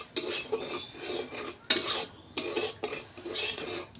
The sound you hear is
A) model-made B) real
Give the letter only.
B